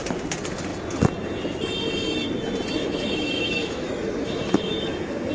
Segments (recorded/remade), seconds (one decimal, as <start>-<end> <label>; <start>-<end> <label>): 0.0-2.8 recorded; 2.8-5.3 remade